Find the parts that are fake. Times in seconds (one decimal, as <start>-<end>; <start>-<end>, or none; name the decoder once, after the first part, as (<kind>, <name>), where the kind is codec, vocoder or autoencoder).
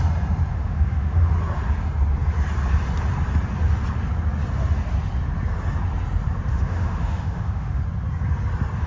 0.5-1.3 (autoencoder, DAC-VAE); 6.5-7.8